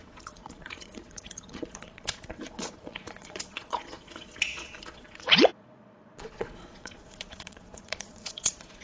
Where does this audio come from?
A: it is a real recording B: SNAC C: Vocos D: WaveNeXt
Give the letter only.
C